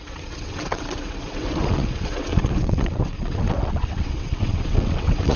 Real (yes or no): no